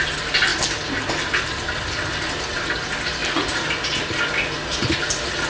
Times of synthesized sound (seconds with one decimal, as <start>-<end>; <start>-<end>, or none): none

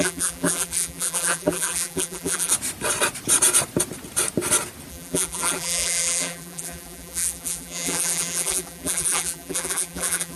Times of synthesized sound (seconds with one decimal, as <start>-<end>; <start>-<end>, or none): 0.0-2.5; 4.9-10.4

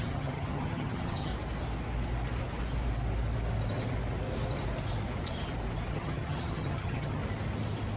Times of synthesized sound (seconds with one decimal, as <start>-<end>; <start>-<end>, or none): 0.0-1.3; 5.9-7.2

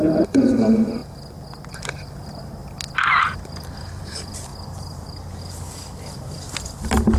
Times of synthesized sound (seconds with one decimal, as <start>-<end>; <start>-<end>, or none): 0.0-1.0; 1.7-2.6; 3.2-4.5